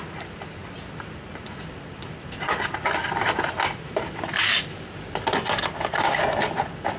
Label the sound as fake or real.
real